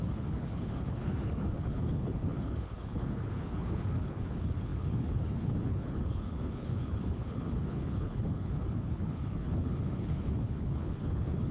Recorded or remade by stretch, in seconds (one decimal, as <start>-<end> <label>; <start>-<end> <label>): 0.0-11.5 remade